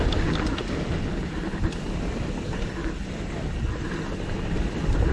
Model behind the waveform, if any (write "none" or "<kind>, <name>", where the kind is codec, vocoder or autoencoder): none